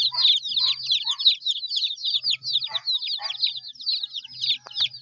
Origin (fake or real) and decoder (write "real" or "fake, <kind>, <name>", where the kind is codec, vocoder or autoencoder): real